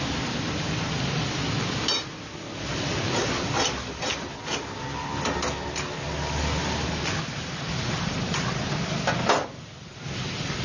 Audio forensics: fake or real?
real